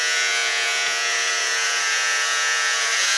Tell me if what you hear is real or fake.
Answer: fake